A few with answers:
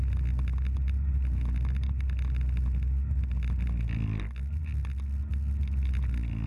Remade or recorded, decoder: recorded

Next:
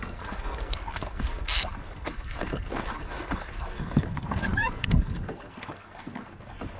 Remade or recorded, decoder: remade, codec, SNAC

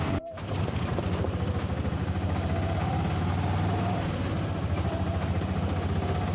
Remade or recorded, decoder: recorded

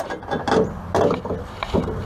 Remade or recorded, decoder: recorded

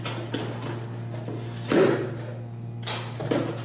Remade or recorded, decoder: recorded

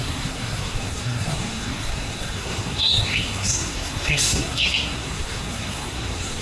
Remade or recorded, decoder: remade, codec, SNAC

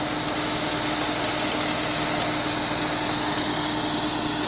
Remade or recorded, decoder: recorded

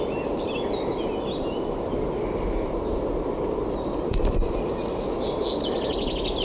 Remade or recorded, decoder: recorded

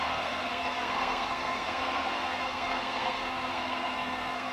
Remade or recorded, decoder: remade, codec, SNAC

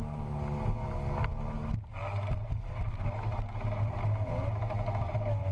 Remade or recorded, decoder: recorded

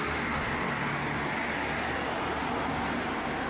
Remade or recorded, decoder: recorded